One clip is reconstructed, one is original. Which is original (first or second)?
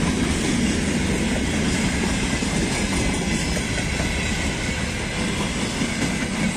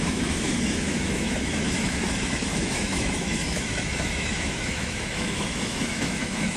first